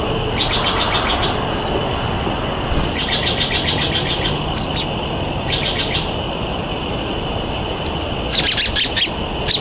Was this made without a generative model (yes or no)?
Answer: yes